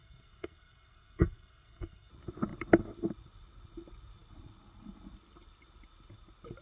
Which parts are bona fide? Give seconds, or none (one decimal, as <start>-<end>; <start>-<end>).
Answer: 2.1-6.6